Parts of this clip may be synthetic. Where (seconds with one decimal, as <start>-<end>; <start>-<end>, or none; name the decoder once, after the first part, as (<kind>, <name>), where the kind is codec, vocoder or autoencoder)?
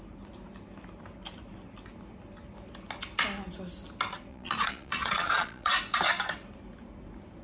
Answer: 4.3-5.7 (vocoder, Vocos)